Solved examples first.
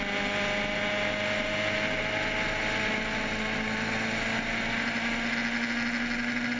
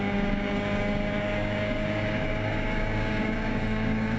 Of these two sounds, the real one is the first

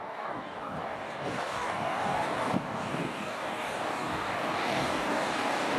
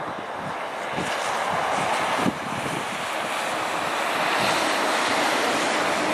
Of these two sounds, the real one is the second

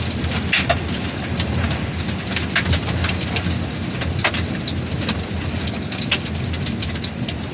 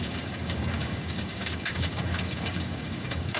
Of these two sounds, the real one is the first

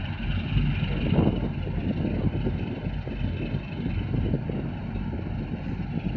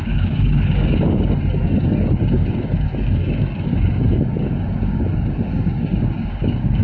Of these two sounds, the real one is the first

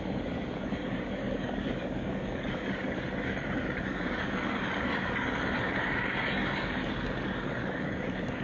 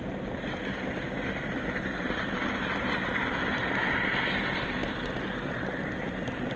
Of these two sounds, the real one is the second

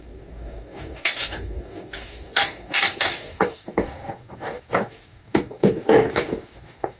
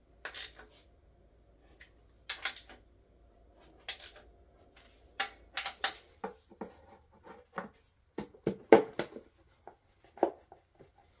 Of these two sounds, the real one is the second